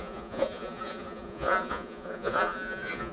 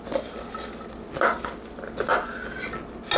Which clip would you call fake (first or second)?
first